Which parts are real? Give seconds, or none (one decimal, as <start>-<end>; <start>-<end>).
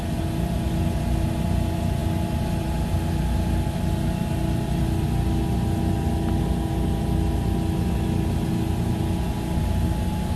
0.0-10.4